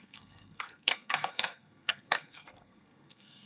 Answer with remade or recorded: remade